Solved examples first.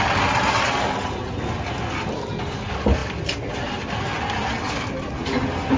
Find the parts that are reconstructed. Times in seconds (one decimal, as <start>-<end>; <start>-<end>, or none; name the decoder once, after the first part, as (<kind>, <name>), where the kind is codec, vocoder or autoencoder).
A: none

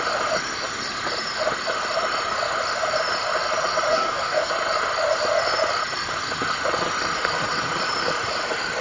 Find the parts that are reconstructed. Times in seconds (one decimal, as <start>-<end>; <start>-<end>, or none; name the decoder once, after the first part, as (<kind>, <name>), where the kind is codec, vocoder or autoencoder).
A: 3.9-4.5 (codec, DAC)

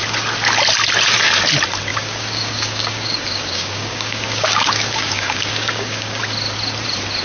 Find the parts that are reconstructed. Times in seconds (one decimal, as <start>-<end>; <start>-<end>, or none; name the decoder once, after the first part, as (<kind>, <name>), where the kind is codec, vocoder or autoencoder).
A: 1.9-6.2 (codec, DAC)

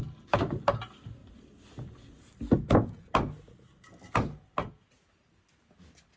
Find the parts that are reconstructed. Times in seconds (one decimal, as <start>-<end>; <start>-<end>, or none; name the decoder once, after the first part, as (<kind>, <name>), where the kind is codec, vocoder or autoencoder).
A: none